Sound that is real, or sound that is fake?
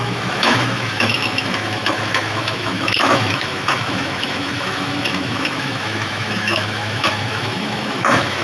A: fake